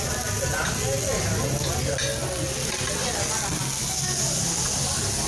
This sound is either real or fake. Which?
real